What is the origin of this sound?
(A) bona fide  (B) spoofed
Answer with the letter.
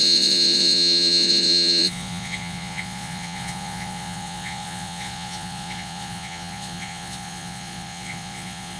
B